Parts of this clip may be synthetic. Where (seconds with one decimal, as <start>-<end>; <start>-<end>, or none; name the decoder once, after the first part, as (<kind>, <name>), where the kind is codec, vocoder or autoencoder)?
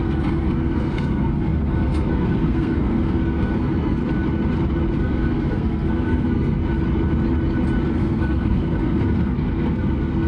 0.0-4.0 (codec, SNAC); 5.0-6.6; 7.9-10.3